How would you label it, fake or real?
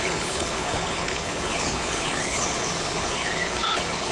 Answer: fake